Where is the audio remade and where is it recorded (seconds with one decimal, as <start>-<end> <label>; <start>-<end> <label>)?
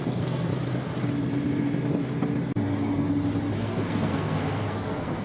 0.0-0.5 remade; 0.5-3.6 recorded; 3.6-5.2 remade